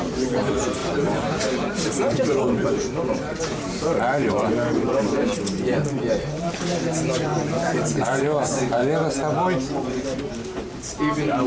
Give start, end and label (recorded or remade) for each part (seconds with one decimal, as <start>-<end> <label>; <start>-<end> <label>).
0.0-8.8 remade; 8.8-10.6 recorded; 10.6-11.5 remade